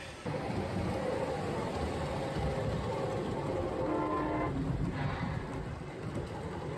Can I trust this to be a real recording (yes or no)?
yes